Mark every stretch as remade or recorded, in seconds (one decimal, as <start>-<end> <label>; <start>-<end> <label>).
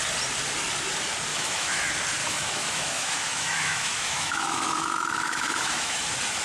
0.0-1.3 recorded; 1.3-1.8 remade; 1.8-2.2 recorded; 2.2-6.0 remade; 6.0-6.4 recorded